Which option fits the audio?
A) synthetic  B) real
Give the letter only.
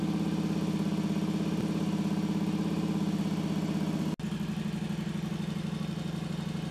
B